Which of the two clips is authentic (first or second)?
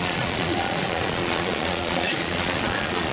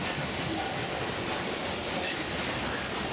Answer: second